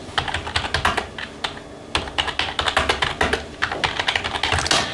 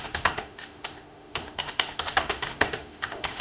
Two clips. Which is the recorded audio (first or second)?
first